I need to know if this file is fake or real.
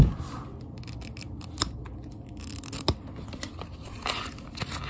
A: real